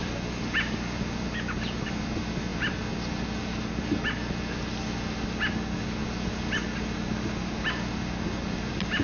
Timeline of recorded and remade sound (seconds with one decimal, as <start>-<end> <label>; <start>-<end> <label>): 0.0-9.0 recorded

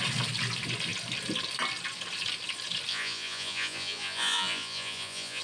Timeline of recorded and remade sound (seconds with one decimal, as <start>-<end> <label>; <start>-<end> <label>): 0.0-2.9 recorded; 2.9-5.4 remade

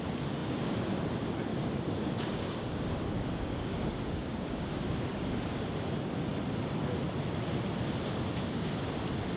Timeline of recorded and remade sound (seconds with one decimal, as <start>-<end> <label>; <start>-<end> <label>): 0.0-1.5 recorded; 1.5-5.7 remade; 5.7-9.4 recorded

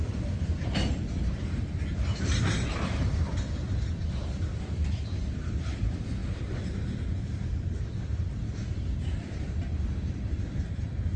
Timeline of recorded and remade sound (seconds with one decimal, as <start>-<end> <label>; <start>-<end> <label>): 0.0-11.2 remade

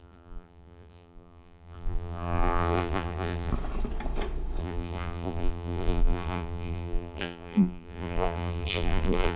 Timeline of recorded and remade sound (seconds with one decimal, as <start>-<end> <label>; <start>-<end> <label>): 0.0-3.5 remade; 3.5-4.6 recorded; 4.6-9.4 remade

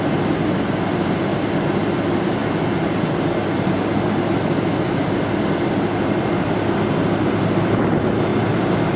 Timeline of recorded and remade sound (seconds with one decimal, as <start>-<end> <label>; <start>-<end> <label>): 0.0-9.0 recorded

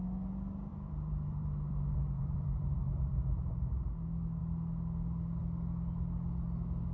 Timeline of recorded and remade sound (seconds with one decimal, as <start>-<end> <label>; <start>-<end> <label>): 0.0-0.7 recorded; 0.7-3.5 remade; 3.5-6.9 recorded

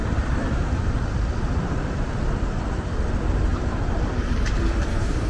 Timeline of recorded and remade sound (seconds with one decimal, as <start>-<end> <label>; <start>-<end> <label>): 0.0-3.5 remade; 3.5-4.3 recorded; 4.3-5.3 remade